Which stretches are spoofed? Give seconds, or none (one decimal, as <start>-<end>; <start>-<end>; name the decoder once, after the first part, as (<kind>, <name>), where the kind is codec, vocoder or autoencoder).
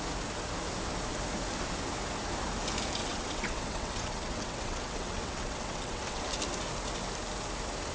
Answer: 3.0-6.2 (vocoder, WaveNeXt)